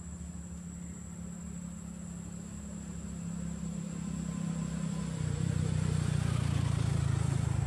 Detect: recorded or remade recorded